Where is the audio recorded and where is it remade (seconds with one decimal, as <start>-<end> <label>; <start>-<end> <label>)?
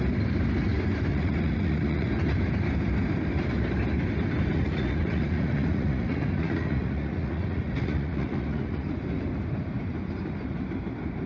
0.0-1.1 recorded; 1.1-2.1 remade; 2.1-4.5 recorded; 4.5-8.9 remade; 8.9-11.3 recorded